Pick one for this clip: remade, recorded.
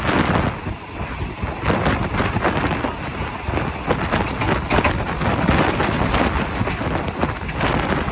recorded